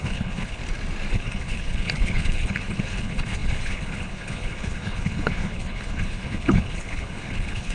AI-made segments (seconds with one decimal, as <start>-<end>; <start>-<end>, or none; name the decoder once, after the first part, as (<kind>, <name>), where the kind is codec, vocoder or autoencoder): 0.0-0.6 (codec, HILCodec); 1.1-7.7